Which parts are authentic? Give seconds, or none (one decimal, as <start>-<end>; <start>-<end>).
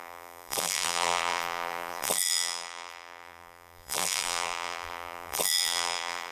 none